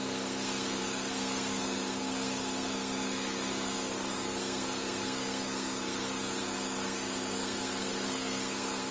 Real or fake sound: fake